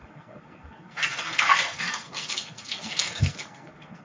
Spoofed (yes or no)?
yes